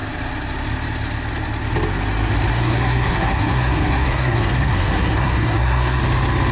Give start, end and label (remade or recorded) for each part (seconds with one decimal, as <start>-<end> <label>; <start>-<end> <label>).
0.0-2.5 recorded; 2.5-6.0 remade; 6.0-6.5 recorded